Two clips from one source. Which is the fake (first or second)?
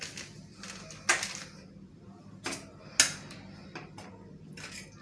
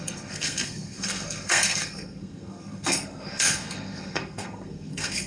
second